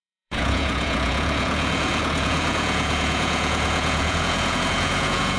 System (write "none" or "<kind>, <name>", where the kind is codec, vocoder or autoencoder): vocoder, Vocos